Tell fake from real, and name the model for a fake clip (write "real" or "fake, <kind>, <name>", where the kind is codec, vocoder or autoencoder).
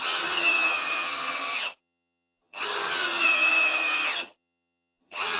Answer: fake, vocoder, HiFi-GAN